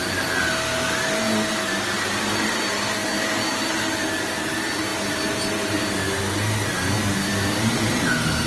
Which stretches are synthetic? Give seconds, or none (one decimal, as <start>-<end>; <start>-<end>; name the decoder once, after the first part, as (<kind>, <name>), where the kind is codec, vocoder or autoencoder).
4.9-5.8 (vocoder, BigVGAN v2); 7.3-8.1